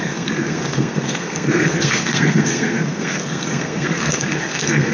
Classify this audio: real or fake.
fake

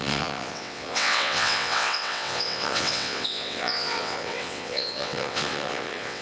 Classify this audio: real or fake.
fake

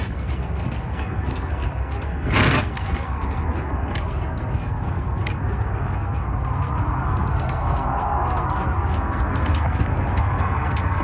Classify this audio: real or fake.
fake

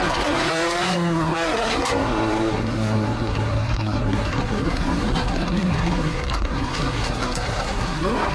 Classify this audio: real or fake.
fake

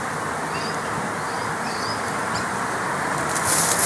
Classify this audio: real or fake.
real